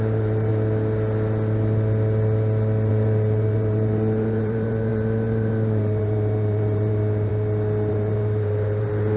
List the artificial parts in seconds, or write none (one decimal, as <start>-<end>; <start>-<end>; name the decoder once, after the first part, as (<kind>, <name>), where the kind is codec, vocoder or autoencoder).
0.0-0.5 (vocoder, BigVGAN v2); 2.9-7.3; 7.9-9.2